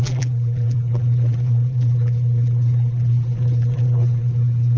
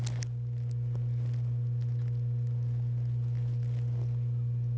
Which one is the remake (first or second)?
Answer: first